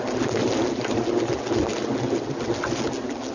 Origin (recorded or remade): recorded